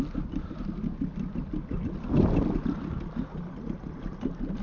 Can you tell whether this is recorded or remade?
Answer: recorded